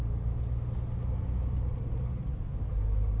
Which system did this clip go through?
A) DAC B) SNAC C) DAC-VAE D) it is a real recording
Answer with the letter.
D